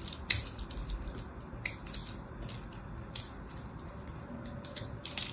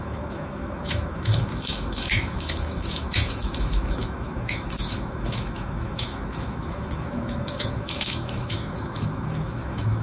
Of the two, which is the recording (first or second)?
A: first